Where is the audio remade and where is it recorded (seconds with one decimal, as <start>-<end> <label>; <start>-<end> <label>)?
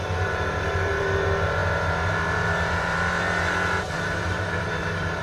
0.0-5.2 remade